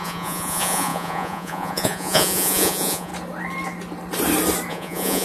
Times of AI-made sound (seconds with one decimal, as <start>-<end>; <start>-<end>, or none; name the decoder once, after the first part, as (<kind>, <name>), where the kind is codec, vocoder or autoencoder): 0.0-3.1 (vocoder, Vocos); 4.7-5.2